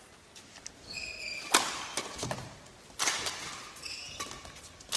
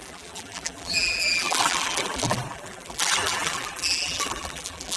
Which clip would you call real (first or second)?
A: first